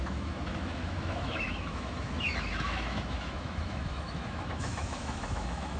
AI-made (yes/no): yes